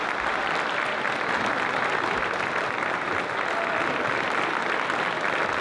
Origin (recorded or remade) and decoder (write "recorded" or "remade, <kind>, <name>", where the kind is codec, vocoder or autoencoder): recorded